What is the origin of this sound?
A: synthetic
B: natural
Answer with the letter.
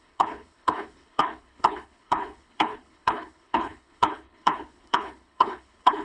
A